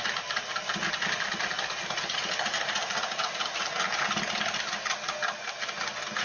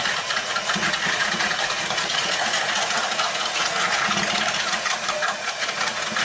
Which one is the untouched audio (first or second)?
first